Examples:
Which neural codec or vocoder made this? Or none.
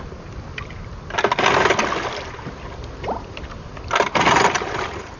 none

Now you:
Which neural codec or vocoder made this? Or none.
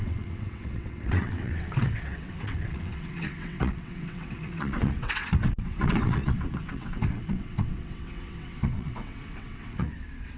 vocoder, WaveNeXt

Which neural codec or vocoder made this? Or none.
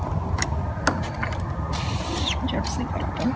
none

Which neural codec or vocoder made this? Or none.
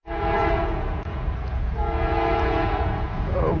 vocoder, Vocos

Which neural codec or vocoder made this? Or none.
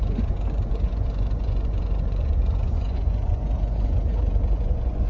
vocoder, Vocos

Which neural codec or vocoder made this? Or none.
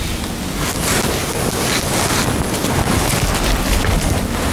none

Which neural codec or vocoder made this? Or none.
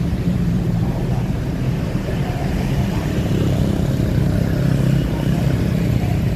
vocoder, BigVGAN v2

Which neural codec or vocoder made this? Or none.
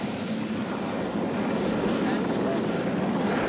none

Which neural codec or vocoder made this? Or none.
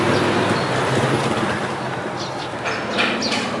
none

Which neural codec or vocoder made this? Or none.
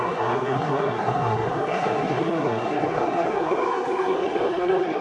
codec, SNAC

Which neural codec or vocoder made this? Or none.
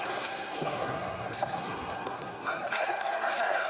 codec, SNAC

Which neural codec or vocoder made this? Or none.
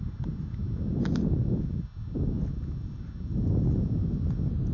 none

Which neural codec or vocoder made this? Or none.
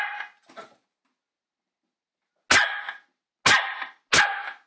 none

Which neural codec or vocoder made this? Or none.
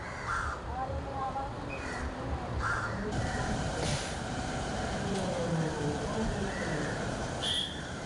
vocoder, BigVGAN v2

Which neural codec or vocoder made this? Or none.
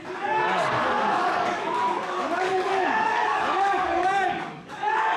codec, DAC